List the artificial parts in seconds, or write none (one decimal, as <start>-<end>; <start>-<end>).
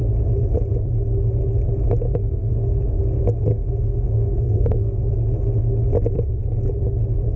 2.2-2.8; 3.5-5.0